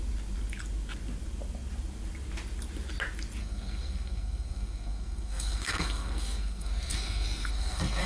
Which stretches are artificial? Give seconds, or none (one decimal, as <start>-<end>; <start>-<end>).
3.4-8.1